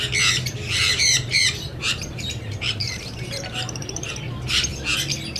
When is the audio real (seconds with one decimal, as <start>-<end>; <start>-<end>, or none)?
0.0-0.9; 4.1-5.4